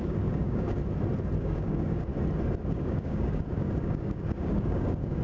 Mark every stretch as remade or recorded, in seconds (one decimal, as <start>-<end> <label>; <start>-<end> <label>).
0.0-0.8 remade; 0.8-1.4 recorded; 1.4-2.1 remade; 2.1-2.7 recorded; 2.7-5.2 remade